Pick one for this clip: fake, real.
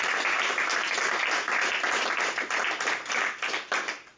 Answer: real